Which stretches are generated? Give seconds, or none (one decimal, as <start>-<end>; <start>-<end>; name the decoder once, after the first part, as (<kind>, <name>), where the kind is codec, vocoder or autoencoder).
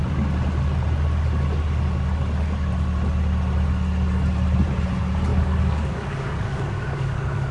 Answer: 5.3-7.5 (codec, DAC)